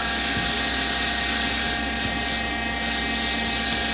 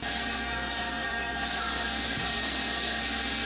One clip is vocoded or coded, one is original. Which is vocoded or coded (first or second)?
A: second